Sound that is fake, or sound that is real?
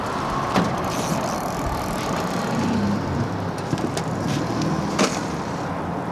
real